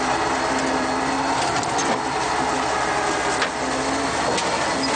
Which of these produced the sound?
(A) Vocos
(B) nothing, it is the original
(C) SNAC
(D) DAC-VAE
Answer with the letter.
B